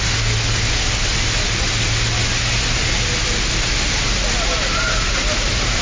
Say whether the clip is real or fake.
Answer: real